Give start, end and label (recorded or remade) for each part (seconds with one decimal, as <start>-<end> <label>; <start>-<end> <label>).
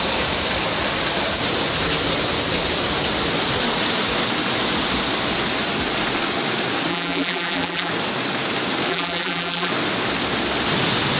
0.0-6.9 recorded; 6.9-7.9 remade; 7.9-8.9 recorded; 8.9-9.7 remade; 9.7-11.2 recorded